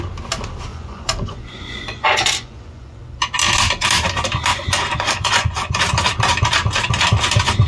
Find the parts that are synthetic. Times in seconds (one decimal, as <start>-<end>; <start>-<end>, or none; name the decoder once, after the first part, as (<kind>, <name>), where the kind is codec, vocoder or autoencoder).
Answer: 0.7-3.0 (vocoder, Vocos); 4.5-5.8